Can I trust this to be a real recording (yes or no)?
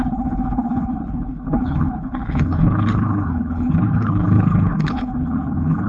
no